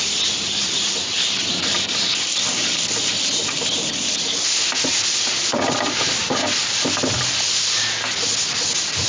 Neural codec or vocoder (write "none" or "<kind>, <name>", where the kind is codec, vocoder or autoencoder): none